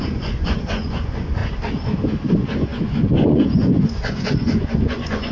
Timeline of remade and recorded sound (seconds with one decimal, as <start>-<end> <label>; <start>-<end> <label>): 0.0-1.4 remade; 1.4-2.3 recorded; 2.3-5.3 remade